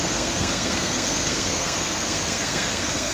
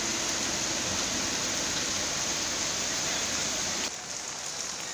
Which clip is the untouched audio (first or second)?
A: second